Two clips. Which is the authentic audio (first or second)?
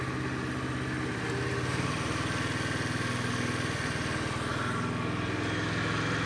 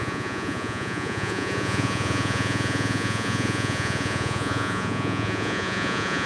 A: first